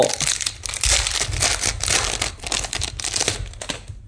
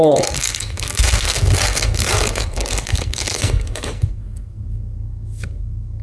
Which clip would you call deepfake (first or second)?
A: second